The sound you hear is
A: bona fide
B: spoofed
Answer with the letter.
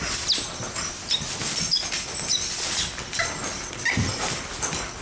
A